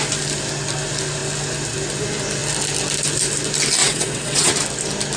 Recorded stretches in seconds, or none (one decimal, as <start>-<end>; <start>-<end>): 0.0-3.8; 4.5-5.2